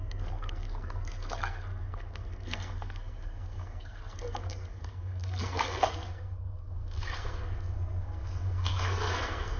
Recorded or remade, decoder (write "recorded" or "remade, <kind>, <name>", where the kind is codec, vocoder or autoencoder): remade, codec, SNAC